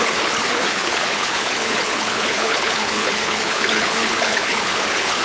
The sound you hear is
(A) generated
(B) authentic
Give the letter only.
A